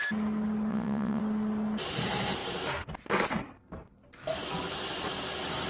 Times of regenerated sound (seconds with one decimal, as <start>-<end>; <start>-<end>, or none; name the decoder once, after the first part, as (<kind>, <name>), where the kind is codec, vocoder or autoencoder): 0.7-1.2 (vocoder, WaveNeXt)